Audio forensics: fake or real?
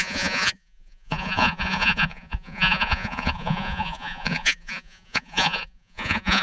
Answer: fake